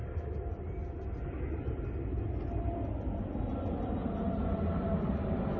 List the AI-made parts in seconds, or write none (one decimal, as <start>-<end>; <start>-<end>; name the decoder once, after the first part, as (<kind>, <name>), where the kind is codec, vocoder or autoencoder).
4.0-5.6 (vocoder, BigVGAN v2)